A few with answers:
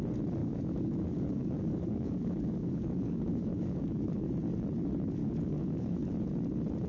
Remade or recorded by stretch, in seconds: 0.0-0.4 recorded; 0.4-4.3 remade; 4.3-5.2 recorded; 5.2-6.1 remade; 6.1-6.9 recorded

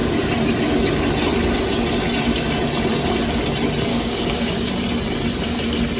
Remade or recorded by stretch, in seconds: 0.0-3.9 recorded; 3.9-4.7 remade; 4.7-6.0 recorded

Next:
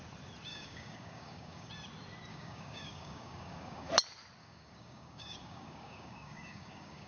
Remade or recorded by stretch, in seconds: 0.0-0.5 recorded; 0.5-1.7 remade; 1.7-2.3 recorded; 2.3-3.9 remade; 3.9-4.4 recorded; 4.4-7.1 remade

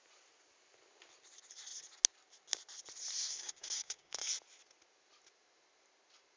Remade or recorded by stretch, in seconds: 0.0-3.3 recorded; 3.3-4.3 remade; 4.3-6.4 recorded